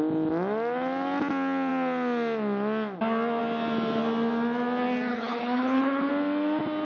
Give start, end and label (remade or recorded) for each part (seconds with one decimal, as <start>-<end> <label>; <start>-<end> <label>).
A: 0.0-5.1 recorded; 5.1-6.1 remade; 6.1-6.8 recorded